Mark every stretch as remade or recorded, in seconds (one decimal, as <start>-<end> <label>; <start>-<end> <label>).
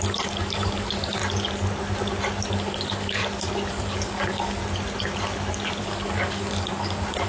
0.0-1.2 remade; 1.2-2.5 recorded; 2.5-3.2 remade; 3.2-3.7 recorded; 3.7-4.6 remade; 4.6-5.8 recorded; 5.8-7.3 remade